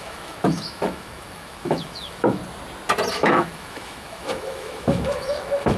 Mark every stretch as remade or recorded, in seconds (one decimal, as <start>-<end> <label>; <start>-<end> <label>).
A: 0.0-2.4 remade; 2.4-3.1 recorded; 3.1-5.8 remade